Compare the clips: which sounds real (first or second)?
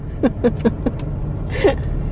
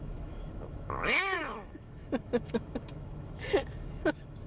first